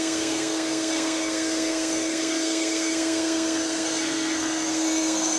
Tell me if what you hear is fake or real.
fake